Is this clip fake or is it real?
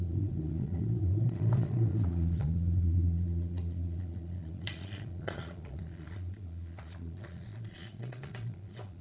fake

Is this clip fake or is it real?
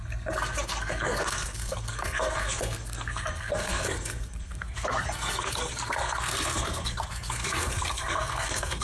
fake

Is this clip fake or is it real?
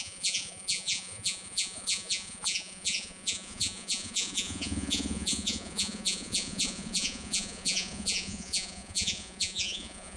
fake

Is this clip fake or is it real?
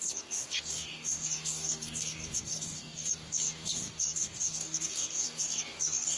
fake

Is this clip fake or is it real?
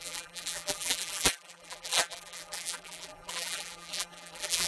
fake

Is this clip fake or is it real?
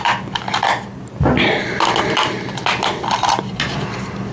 real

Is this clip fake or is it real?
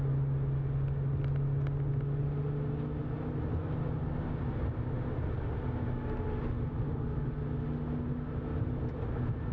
real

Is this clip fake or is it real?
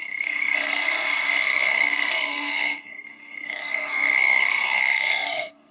fake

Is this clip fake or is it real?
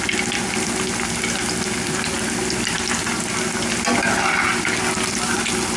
real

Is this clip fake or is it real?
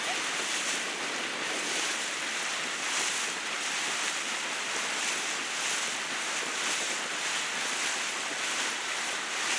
real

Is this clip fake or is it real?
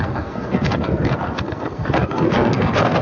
fake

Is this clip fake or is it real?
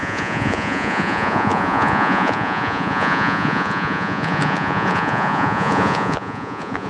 fake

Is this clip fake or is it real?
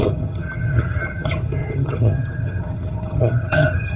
fake